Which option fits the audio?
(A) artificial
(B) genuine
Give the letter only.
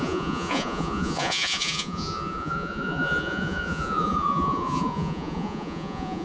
A